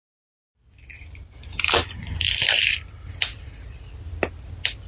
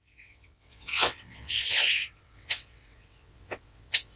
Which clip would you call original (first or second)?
first